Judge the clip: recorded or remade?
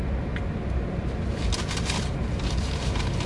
recorded